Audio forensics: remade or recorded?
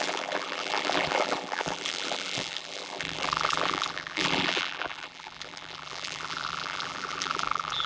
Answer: remade